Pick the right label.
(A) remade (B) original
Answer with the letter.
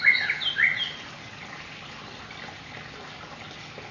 B